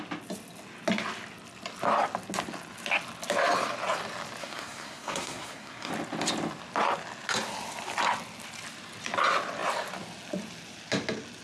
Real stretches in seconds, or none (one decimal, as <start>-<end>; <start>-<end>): 0.0-4.4; 5.9-11.4